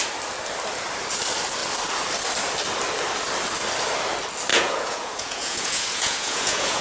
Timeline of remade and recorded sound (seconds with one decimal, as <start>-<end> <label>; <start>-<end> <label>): 0.0-4.5 recorded; 4.5-6.8 remade

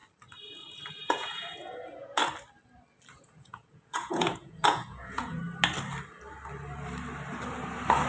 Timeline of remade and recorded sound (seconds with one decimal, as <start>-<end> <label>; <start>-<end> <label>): 0.0-0.9 recorded; 0.9-2.2 remade; 2.2-3.1 recorded; 3.1-5.4 remade; 5.4-8.1 recorded

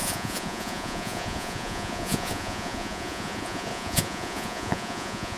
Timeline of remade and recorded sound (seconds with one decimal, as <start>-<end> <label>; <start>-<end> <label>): 0.0-5.4 remade